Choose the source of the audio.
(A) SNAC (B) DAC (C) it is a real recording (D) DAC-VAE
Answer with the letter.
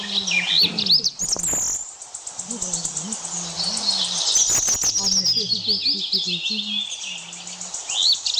C